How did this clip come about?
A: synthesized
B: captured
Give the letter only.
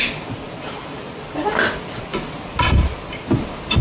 B